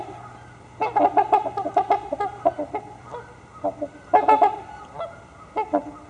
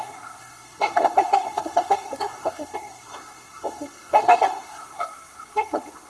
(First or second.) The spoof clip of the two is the second